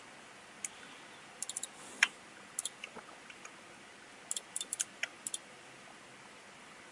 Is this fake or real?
real